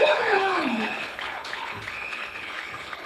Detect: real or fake fake